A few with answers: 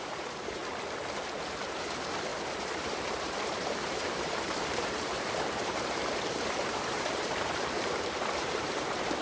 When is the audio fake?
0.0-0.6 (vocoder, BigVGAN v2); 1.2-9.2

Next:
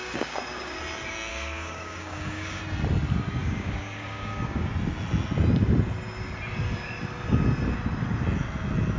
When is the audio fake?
0.0-0.8 (codec, DAC); 1.3-2.6; 3.4-4.7

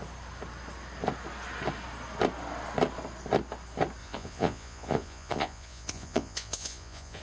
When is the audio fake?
4.0-7.2 (vocoder, Vocos)

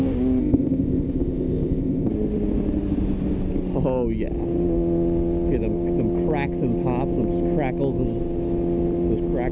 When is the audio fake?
0.4-2.1 (codec, ZipCodec)

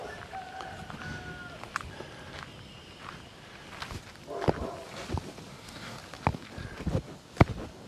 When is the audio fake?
5.5-6.0 (codec, DAC)

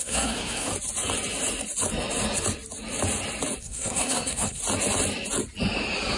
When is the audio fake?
0.0-0.7 (codec, SNAC); 3.6-4.6

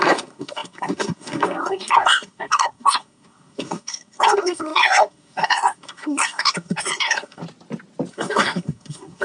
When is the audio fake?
0.0-7.4 (codec, SNAC); 8.1-9.2

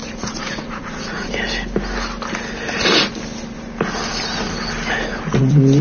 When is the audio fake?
0.0-1.3 (vocoder, Vocos)